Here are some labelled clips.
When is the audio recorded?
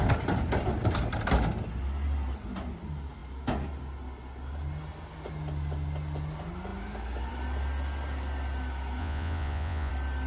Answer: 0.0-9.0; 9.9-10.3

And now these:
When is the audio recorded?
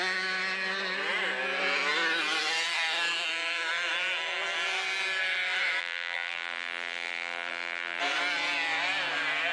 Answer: 0.0-5.8; 8.0-9.5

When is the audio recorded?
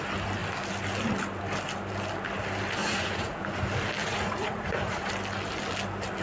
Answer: 0.0-2.8; 3.4-4.0; 5.1-6.2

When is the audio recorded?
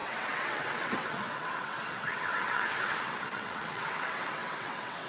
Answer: none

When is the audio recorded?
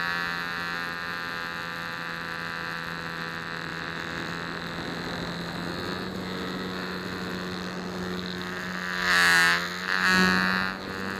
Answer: 0.0-3.7; 4.3-11.2